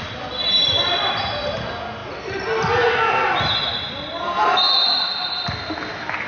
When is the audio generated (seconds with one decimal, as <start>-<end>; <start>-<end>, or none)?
none

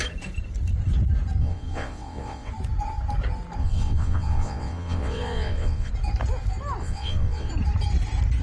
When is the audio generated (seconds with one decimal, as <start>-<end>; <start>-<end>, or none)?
1.4-2.5; 3.6-5.9; 6.8-7.5